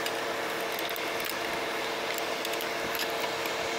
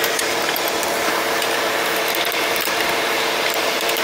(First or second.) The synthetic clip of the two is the second